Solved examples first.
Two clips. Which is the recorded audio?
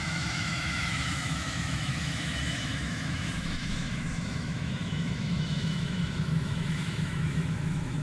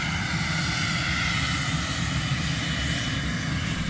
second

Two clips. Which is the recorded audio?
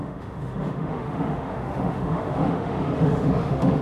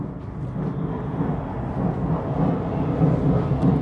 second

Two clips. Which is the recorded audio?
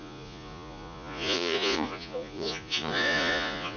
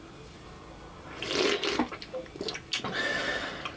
second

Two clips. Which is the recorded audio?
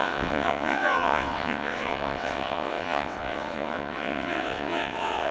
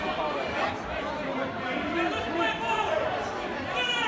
second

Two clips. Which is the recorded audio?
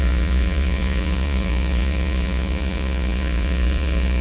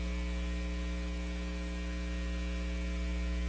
second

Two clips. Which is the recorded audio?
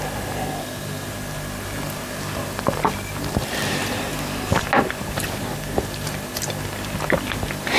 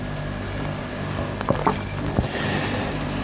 first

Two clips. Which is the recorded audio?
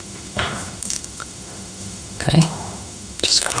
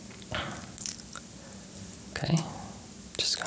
second